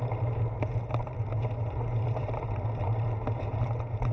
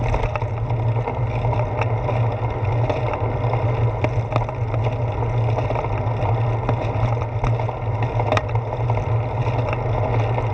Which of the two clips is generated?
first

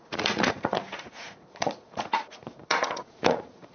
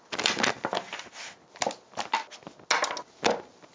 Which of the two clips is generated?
first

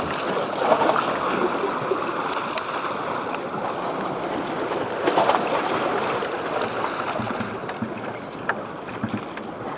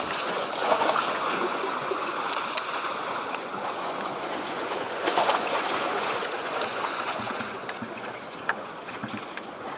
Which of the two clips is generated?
second